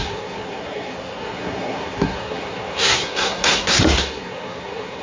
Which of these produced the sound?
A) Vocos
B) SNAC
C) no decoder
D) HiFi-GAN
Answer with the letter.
B